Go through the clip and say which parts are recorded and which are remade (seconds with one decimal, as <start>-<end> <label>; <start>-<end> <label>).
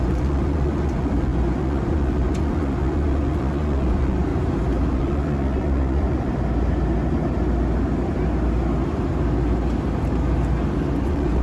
0.0-4.3 remade; 4.3-4.9 recorded; 4.9-6.3 remade; 6.3-11.0 recorded; 11.0-11.4 remade